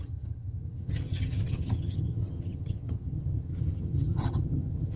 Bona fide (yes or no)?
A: no